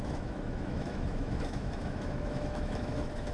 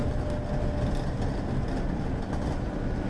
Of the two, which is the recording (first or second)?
second